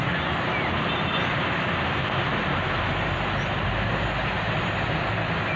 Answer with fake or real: real